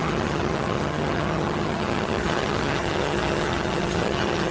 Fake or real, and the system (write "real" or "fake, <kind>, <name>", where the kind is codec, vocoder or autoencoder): fake, vocoder, HiFi-GAN